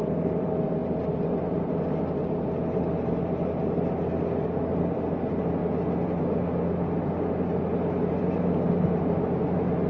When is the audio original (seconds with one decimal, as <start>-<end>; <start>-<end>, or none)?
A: 0.0-9.9